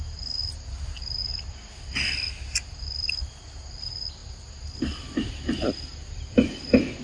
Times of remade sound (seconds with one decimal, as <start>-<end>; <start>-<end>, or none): none

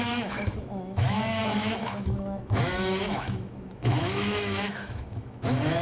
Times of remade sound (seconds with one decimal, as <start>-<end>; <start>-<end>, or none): 0.0-5.8

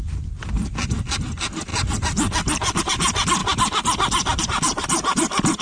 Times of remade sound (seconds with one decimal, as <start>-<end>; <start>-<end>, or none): none

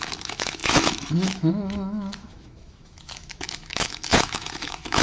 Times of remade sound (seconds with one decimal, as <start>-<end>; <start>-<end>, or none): 0.0-5.0

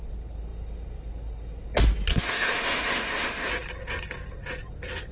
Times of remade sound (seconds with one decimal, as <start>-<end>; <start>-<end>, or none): 2.1-3.5

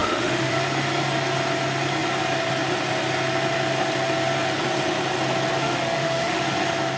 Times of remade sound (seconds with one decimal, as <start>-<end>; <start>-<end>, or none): 0.0-0.5; 5.6-6.4

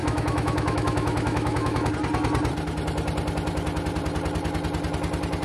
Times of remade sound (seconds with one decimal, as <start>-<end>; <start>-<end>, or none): 0.0-1.9